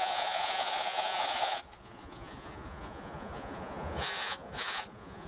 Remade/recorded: remade